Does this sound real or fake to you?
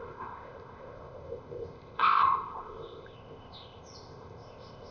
fake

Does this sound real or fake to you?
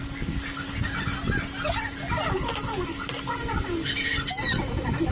real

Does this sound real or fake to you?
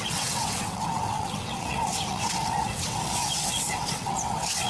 fake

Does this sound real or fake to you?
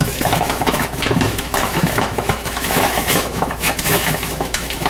fake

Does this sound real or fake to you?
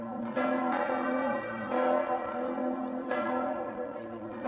fake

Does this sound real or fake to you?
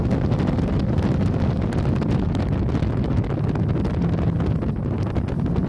real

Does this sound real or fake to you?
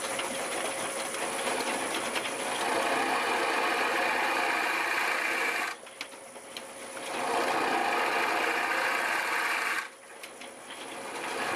real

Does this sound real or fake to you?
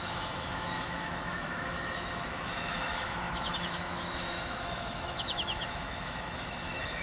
fake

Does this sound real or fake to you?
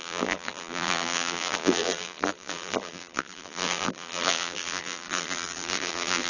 fake